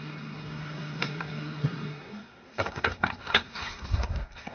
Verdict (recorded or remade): remade